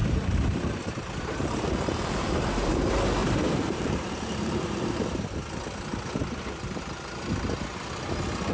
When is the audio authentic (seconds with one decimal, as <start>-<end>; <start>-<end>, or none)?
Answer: 2.7-3.2; 5.0-8.5